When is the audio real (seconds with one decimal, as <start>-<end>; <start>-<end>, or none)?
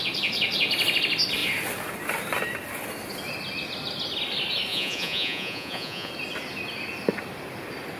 0.0-4.7; 6.1-8.0